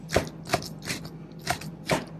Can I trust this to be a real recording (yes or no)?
yes